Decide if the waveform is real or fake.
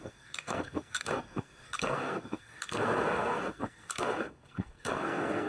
fake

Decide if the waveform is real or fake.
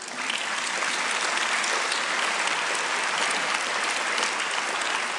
real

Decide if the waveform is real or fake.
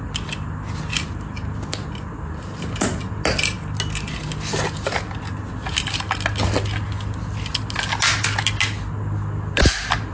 real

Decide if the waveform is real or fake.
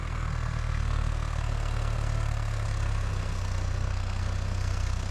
fake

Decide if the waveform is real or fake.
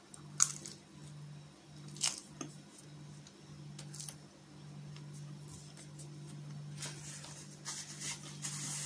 real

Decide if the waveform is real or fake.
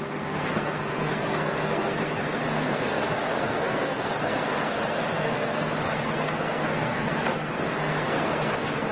fake